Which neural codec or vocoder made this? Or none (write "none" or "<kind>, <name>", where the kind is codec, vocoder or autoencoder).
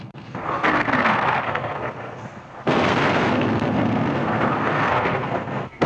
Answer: codec, SNAC